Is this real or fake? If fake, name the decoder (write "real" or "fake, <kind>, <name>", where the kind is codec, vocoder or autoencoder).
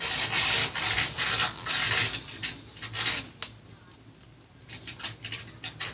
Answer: real